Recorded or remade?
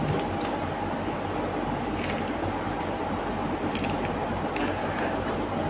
recorded